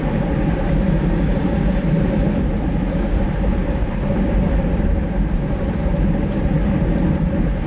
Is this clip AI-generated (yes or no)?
yes